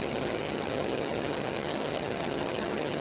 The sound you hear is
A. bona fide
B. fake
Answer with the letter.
B